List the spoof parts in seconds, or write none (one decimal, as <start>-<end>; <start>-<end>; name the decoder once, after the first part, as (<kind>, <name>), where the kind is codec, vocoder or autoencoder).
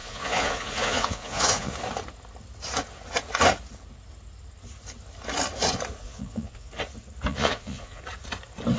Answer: 0.0-1.7 (vocoder, Vocos); 6.0-6.7; 7.3-8.0